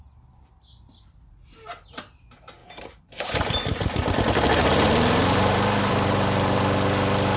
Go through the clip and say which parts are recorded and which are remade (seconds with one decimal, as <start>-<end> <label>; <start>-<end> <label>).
0.0-2.6 recorded; 2.6-6.6 remade; 6.6-7.4 recorded